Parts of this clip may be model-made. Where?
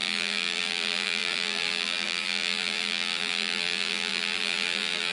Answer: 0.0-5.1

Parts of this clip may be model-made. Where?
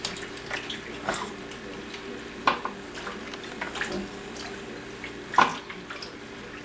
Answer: none